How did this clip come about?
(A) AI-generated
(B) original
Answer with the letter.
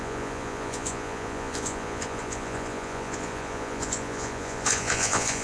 A